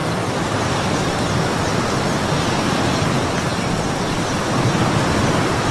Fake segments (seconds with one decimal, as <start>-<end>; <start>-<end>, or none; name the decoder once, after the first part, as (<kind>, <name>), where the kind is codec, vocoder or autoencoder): none